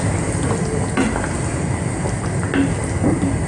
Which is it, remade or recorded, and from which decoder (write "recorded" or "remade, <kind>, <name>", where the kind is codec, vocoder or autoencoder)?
recorded